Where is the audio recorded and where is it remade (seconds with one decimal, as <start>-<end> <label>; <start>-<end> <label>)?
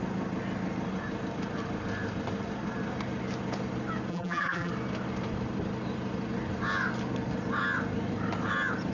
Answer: 0.0-4.1 recorded; 4.1-4.7 remade; 4.7-8.9 recorded